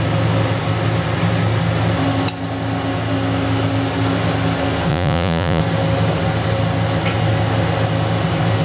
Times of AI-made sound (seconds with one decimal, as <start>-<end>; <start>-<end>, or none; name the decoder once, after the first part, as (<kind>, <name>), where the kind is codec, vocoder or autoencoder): 4.9-5.6 (vocoder, Vocos)

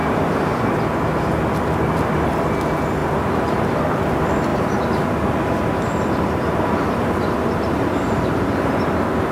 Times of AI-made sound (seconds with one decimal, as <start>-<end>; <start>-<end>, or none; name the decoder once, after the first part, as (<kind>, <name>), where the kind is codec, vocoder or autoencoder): 0.0-0.7 (vocoder, BigVGAN v2); 3.0-3.8; 4.5-8.7

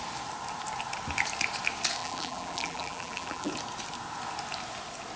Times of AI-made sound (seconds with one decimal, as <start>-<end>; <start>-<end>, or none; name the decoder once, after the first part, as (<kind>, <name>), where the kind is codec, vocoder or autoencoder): 2.0-3.5 (vocoder, BigVGAN v2)

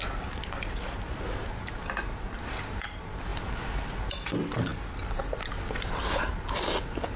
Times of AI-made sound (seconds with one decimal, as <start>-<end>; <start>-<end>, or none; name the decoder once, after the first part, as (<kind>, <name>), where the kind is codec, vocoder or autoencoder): none